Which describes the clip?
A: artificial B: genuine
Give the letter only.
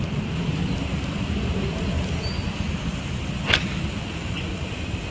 B